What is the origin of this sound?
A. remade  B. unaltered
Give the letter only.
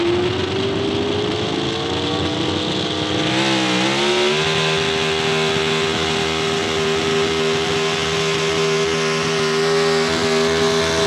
B